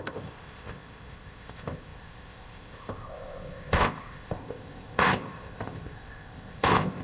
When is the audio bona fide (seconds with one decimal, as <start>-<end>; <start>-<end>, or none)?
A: none